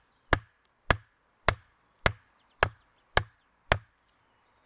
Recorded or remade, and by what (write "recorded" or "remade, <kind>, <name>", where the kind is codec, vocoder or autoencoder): recorded